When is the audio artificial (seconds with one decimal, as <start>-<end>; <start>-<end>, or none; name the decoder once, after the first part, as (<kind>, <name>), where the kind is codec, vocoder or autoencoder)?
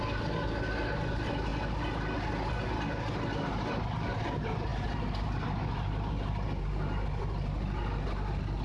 none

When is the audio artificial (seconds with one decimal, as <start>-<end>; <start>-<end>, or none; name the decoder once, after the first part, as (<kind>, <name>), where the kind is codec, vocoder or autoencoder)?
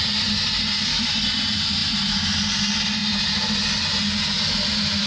none